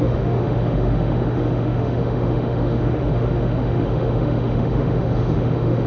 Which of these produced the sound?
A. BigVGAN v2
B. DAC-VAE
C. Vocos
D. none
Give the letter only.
B